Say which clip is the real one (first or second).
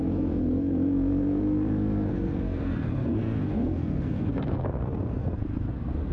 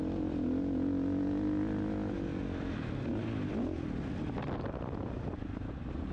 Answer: second